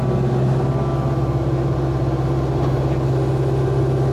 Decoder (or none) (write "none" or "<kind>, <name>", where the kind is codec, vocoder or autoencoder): none